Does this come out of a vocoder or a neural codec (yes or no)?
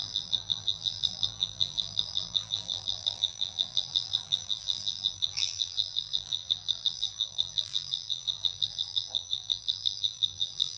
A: yes